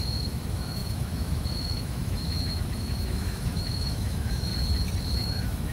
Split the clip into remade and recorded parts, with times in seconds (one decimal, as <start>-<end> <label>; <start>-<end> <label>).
0.0-4.5 remade; 4.5-5.0 recorded; 5.0-5.7 remade